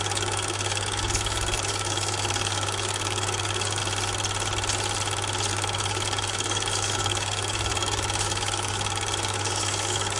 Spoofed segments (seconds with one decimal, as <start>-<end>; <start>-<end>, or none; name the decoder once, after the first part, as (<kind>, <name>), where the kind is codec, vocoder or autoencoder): 0.0-3.8 (codec, DAC); 5.5-10.2